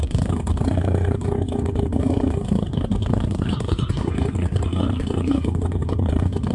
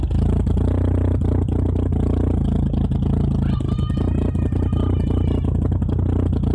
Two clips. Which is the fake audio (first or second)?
first